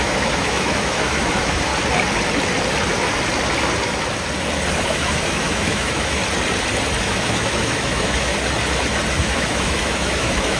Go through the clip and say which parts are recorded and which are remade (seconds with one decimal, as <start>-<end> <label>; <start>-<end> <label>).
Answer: 0.0-1.7 remade; 1.7-4.8 recorded; 4.8-6.2 remade; 6.2-7.0 recorded; 7.0-8.3 remade; 8.3-9.1 recorded; 9.1-10.6 remade